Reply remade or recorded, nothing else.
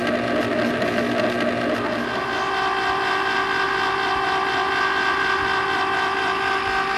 recorded